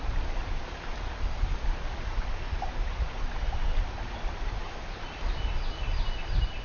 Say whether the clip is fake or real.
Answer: real